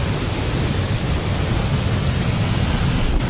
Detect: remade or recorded recorded